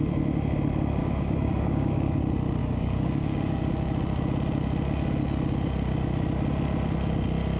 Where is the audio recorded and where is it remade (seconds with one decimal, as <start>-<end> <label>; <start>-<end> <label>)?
0.0-1.0 recorded; 1.0-2.2 remade; 2.2-2.6 recorded; 2.6-3.6 remade; 3.6-7.6 recorded